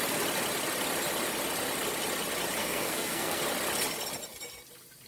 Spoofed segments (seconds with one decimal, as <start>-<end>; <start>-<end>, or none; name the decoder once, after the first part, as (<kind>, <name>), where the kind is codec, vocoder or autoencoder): 2.6-3.4 (codec, SNAC)